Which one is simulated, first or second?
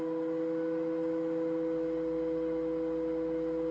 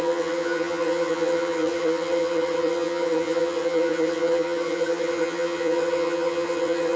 second